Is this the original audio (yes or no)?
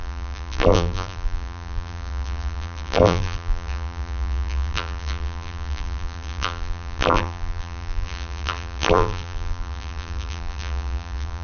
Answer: no